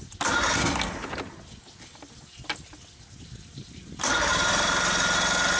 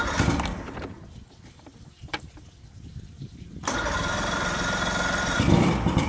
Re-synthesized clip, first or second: second